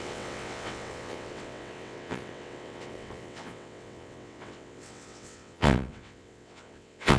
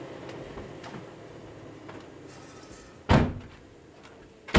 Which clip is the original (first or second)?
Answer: second